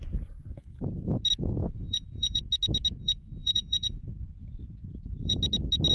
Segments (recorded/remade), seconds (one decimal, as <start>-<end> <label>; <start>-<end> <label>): 0.0-1.6 recorded; 1.6-2.4 remade; 2.4-3.0 recorded; 3.0-5.4 remade; 5.4-5.9 recorded